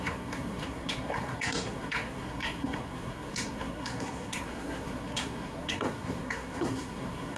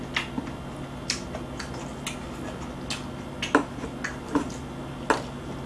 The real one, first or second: second